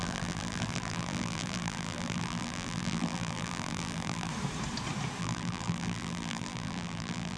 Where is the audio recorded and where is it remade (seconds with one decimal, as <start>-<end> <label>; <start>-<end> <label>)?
0.0-4.3 remade; 4.3-5.2 recorded; 5.2-7.4 remade